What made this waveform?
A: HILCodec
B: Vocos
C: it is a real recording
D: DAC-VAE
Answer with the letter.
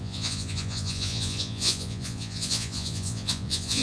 B